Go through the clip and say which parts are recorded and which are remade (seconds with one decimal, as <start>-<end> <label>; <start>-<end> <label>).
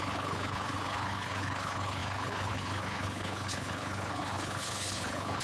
0.0-5.4 remade